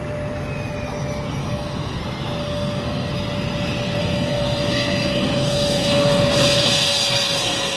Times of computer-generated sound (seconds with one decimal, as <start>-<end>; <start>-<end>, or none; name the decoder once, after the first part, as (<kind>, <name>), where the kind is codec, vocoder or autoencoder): 1.4-2.0 (codec, SNAC); 2.4-3.1; 4.0-7.8